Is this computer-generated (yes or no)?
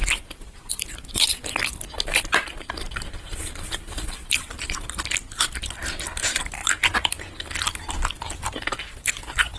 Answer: no